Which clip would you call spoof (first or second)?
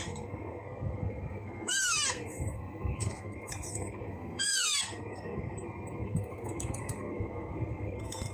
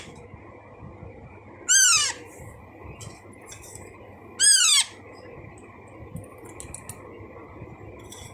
first